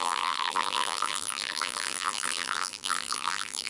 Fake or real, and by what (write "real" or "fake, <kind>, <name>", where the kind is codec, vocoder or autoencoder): fake, vocoder, BigVGAN v2